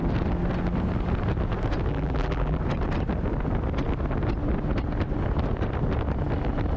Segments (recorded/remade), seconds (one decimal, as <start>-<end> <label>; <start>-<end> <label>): 0.0-1.9 recorded; 1.9-2.6 remade; 2.6-6.8 recorded